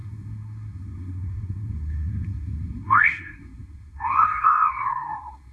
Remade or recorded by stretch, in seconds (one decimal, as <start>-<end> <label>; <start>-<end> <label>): 0.0-5.5 remade